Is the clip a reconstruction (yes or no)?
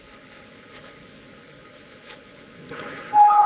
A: yes